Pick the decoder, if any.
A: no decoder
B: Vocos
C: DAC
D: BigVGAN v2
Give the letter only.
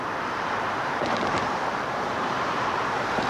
D